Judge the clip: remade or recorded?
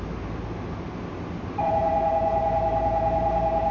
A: recorded